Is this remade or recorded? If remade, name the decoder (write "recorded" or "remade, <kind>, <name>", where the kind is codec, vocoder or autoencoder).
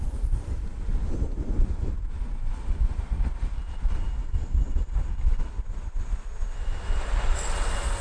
recorded